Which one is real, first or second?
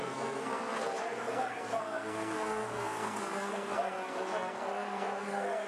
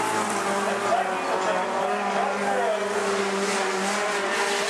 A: second